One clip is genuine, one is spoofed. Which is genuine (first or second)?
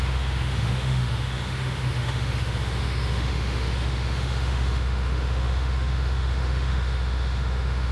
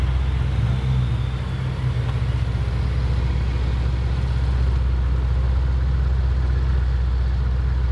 second